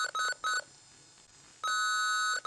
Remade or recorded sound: recorded